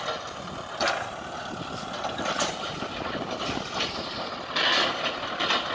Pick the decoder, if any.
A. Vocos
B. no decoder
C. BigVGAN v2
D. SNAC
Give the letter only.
B